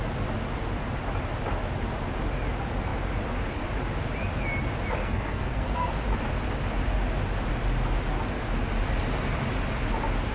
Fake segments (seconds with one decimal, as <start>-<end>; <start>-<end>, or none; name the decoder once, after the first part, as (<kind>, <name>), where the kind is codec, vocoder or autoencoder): 5.0-5.9 (codec, SNAC)